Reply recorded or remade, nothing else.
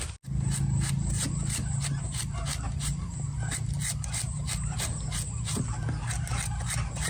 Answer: recorded